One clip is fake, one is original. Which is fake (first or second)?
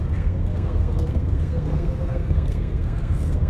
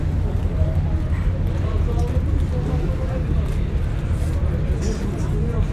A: first